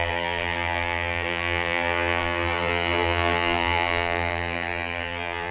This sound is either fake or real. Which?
fake